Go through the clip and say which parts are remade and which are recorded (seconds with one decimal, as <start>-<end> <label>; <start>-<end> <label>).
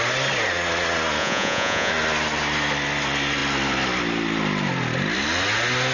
0.0-1.2 recorded; 1.2-1.9 remade; 1.9-5.9 recorded